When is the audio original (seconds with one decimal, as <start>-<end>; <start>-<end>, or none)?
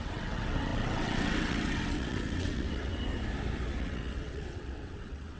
3.1-3.8